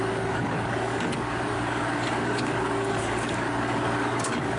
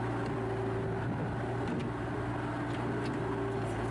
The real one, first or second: second